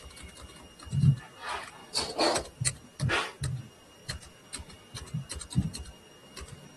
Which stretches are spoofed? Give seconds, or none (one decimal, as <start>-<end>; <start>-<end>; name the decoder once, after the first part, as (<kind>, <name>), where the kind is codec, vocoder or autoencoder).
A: 4.0-4.8 (vocoder, Vocos)